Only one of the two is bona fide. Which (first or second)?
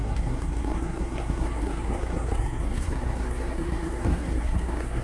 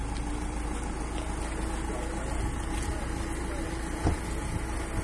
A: second